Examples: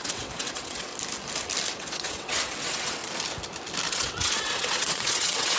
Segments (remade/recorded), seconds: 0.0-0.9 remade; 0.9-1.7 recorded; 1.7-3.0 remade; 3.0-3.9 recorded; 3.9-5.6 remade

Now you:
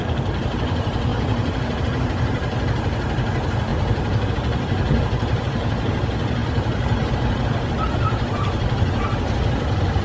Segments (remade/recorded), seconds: 0.0-10.0 remade

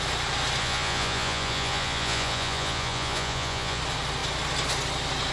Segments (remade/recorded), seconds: 0.0-0.6 recorded; 0.6-3.8 remade; 3.8-5.3 recorded

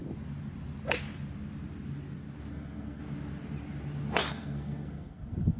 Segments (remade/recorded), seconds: 0.0-2.5 recorded; 2.5-3.0 remade; 3.0-4.3 recorded; 4.3-5.6 remade

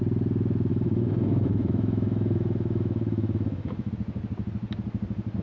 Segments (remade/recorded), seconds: 0.0-0.7 recorded; 0.7-3.9 remade; 3.9-5.4 recorded